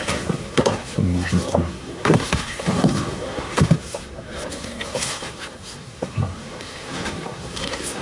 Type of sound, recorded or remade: remade